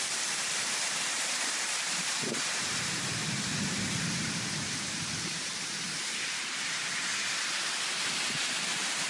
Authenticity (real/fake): fake